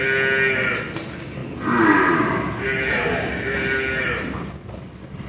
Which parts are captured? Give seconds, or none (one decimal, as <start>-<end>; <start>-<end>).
0.0-5.3